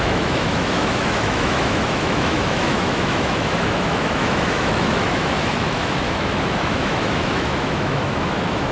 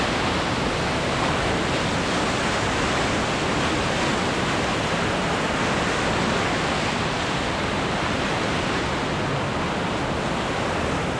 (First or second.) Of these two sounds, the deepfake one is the first